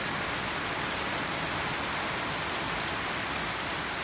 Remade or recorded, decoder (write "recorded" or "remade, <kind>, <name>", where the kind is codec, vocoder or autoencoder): recorded